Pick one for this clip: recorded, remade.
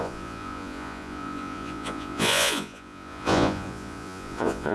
remade